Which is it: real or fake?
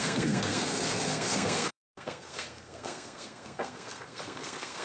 fake